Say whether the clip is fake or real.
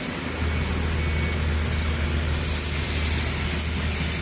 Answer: real